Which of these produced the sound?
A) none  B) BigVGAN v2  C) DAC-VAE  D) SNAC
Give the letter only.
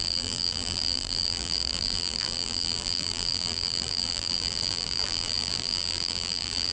B